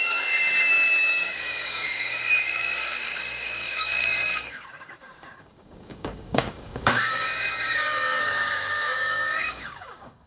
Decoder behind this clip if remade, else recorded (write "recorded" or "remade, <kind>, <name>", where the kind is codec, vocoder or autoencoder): remade, codec, DAC